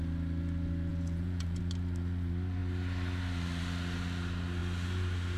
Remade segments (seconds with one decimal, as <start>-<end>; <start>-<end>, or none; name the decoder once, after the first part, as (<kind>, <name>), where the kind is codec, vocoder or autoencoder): 0.9-1.6 (vocoder, Vocos)